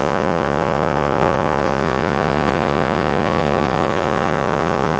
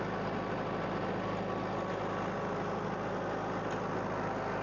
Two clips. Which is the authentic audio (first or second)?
second